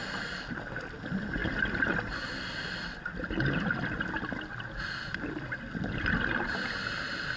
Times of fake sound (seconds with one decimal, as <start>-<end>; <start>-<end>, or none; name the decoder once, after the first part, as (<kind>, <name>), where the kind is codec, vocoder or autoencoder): none